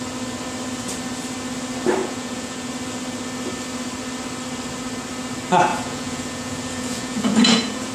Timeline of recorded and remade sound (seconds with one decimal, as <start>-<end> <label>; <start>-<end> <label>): 0.0-2.0 recorded; 2.0-2.7 remade; 2.7-5.7 recorded; 5.7-7.9 remade